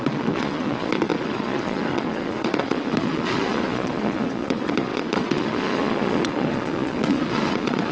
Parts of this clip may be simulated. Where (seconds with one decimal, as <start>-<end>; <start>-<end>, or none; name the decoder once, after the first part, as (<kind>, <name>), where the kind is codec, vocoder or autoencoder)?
0.0-7.9 (vocoder, Vocos)